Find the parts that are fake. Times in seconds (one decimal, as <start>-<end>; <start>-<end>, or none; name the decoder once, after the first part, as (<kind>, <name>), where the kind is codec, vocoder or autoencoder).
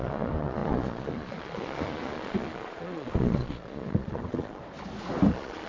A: 0.0-4.6 (vocoder, Vocos); 5.3-5.7